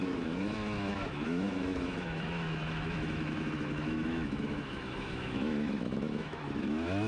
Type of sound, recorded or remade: remade